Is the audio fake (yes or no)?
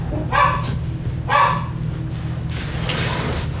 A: no